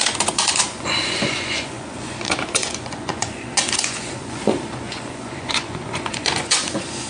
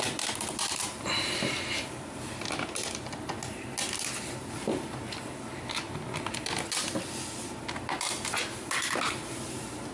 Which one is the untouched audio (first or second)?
second